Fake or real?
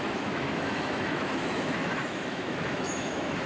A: fake